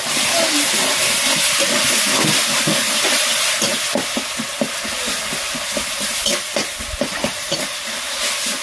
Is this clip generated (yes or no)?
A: no